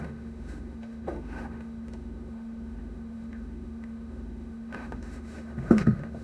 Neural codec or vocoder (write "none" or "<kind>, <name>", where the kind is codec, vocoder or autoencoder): autoencoder, DAC-VAE